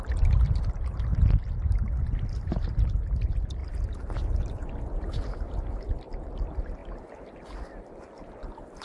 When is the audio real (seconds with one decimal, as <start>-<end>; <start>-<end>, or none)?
1.1-2.3; 3.6-5.8; 6.8-8.8